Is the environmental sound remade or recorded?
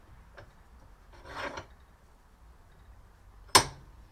recorded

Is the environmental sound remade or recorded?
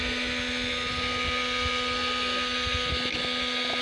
recorded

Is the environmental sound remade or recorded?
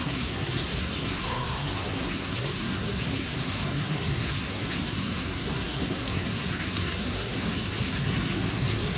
remade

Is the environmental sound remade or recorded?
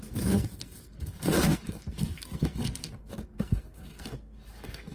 remade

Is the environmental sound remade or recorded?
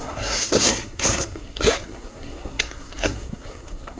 remade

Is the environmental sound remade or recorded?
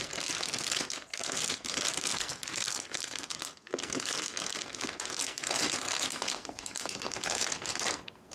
remade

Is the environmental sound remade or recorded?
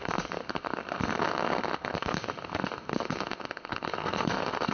remade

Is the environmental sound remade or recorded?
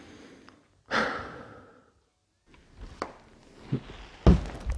recorded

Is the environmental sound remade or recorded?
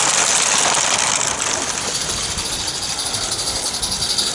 recorded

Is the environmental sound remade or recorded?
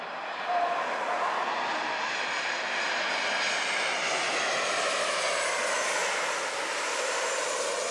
recorded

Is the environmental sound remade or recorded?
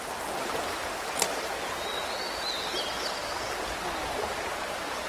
recorded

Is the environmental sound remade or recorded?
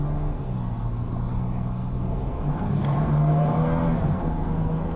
remade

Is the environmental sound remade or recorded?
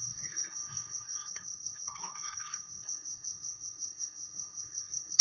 remade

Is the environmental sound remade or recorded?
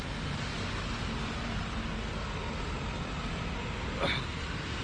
recorded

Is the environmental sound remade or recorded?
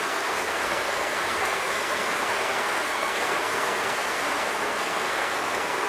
remade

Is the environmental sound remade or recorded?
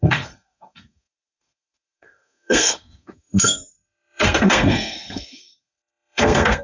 remade